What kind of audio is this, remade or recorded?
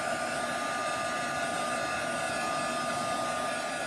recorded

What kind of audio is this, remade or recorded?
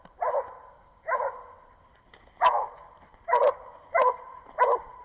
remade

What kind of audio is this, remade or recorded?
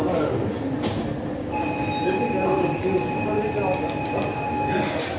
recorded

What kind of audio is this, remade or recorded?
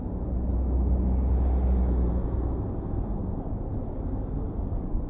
recorded